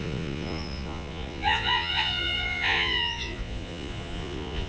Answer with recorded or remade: remade